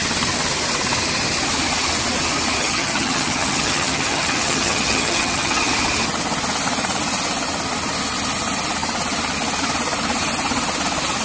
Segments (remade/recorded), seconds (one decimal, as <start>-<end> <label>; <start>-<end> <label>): 0.0-2.6 recorded; 2.6-5.7 remade; 5.7-11.2 recorded